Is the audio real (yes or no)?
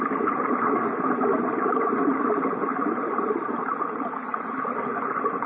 yes